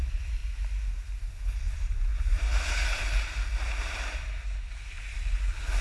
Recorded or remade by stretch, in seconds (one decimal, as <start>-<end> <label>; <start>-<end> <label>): 0.0-5.8 recorded